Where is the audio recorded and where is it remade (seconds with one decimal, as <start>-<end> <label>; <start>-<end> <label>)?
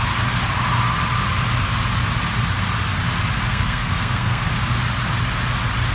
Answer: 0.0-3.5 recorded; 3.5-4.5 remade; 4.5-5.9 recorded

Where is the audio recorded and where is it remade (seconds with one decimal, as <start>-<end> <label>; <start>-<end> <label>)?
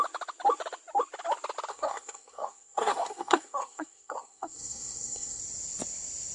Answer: 0.0-1.7 recorded; 1.7-5.4 remade; 5.4-6.3 recorded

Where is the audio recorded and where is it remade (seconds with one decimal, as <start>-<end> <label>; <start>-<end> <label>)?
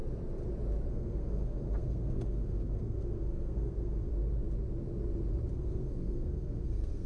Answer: 0.0-0.9 recorded; 0.9-4.1 remade; 4.1-5.5 recorded; 5.5-7.1 remade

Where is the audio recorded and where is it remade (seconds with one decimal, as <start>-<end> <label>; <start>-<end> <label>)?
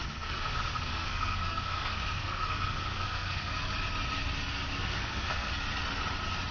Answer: 0.0-3.5 remade; 3.5-4.7 recorded; 4.7-5.5 remade; 5.5-6.5 recorded